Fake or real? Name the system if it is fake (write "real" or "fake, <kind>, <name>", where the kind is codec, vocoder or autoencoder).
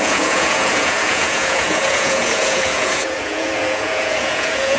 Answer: fake, vocoder, Vocos